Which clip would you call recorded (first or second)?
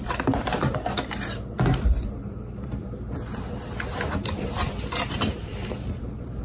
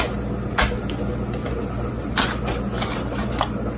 second